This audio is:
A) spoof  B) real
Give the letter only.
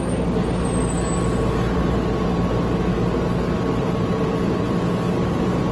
B